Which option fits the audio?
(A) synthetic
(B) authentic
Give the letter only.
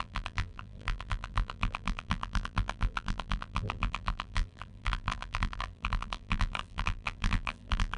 A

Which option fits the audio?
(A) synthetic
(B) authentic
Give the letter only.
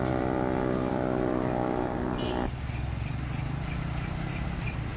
A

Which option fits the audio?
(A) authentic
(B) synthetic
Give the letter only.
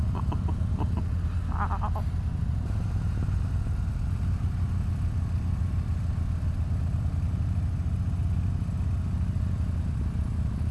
A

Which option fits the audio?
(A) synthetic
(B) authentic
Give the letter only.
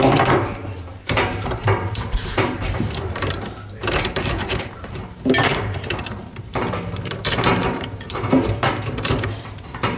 A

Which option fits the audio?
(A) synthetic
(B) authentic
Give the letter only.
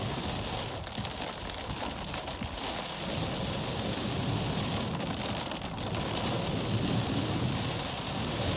B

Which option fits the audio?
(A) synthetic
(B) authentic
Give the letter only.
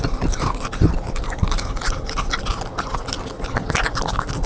B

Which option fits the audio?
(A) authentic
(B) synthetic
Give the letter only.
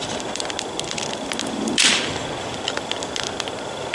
B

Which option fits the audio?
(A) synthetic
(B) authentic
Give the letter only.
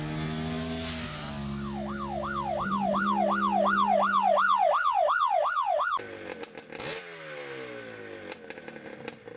B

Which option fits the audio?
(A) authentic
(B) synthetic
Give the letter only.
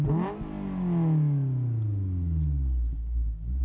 A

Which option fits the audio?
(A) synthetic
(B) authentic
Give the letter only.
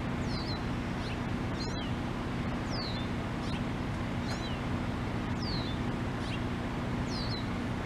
B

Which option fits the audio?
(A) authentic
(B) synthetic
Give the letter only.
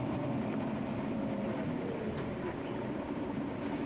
B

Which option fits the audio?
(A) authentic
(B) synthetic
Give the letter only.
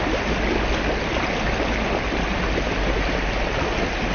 A